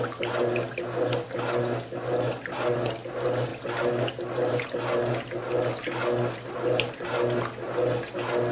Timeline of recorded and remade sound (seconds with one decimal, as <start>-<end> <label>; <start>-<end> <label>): 0.0-8.5 recorded